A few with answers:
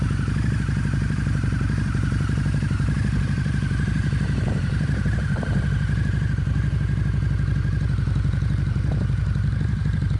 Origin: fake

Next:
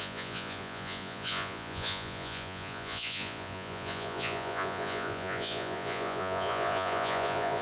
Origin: fake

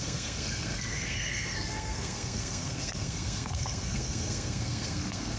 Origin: fake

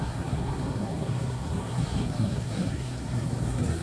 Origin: fake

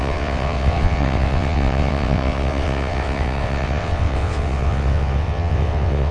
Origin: fake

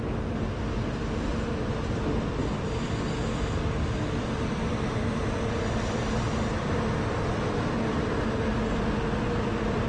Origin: real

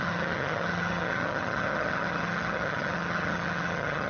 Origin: fake